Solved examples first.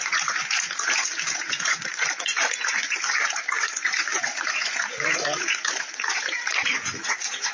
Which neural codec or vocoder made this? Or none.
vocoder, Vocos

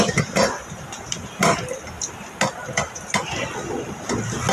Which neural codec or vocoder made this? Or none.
none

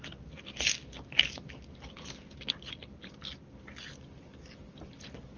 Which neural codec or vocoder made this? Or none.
none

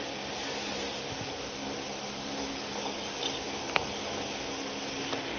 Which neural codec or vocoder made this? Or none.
none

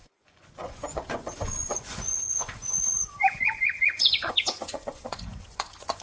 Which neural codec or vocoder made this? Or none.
vocoder, Vocos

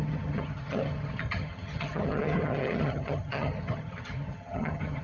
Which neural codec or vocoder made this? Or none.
vocoder, HiFi-GAN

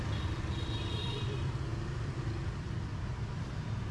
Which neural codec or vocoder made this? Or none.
none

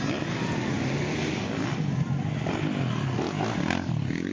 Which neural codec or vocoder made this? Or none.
none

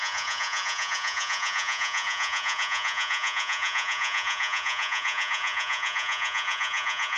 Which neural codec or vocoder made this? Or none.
vocoder, Vocos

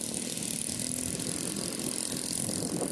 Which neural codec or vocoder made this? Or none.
none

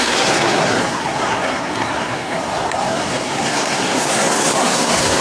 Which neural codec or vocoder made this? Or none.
codec, SNAC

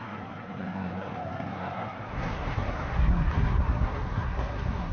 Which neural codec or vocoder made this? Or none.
codec, SNAC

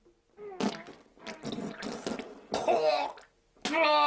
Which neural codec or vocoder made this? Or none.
none